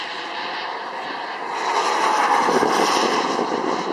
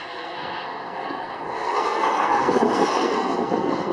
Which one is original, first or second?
first